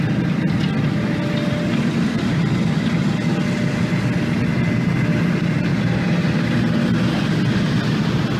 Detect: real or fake real